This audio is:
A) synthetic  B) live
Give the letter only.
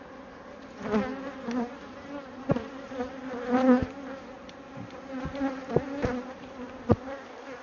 B